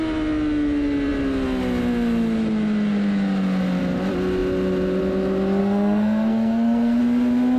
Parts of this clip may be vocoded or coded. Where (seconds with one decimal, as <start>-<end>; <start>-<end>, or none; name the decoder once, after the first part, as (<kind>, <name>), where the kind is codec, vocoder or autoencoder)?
5.6-7.0 (codec, SNAC)